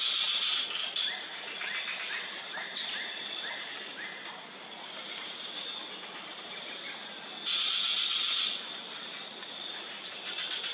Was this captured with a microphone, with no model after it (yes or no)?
yes